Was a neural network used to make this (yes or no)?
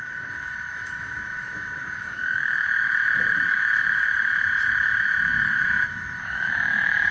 yes